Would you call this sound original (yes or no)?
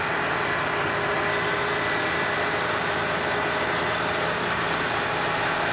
yes